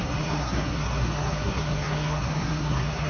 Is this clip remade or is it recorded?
remade